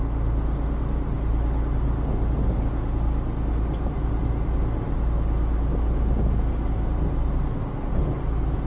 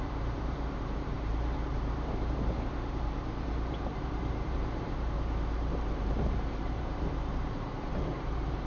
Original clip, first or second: first